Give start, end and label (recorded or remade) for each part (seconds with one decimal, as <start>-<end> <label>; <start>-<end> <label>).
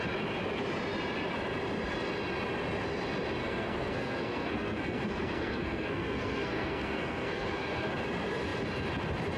0.0-3.4 recorded; 3.4-7.9 remade; 7.9-9.4 recorded